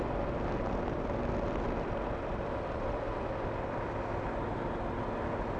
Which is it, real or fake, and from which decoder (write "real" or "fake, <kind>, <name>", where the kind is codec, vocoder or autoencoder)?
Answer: real